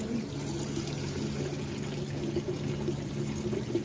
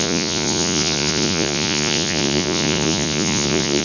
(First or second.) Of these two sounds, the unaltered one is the first